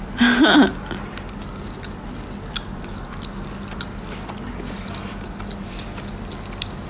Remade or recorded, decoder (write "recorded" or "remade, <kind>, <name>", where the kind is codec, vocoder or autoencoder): recorded